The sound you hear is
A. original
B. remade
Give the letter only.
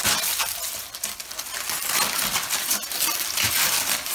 A